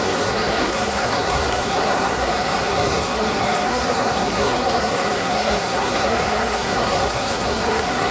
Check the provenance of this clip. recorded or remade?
remade